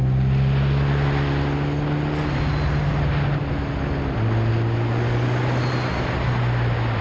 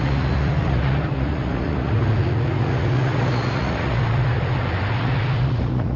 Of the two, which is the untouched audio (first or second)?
first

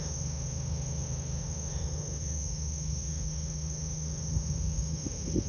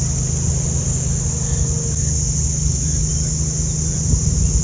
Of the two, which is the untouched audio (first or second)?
second